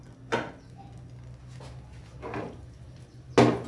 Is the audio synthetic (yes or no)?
no